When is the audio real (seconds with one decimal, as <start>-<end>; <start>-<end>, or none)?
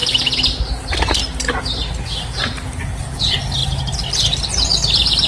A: 3.2-3.6